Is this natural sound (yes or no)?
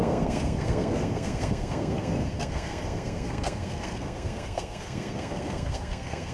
no